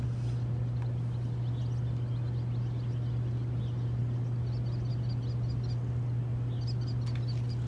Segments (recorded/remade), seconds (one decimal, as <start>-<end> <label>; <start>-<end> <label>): 0.0-7.7 recorded